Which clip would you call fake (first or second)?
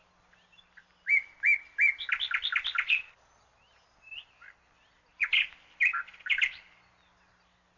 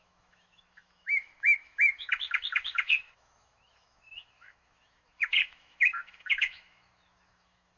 second